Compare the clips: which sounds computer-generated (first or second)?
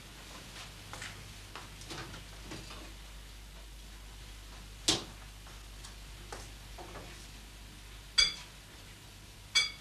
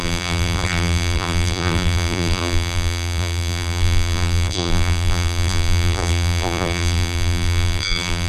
second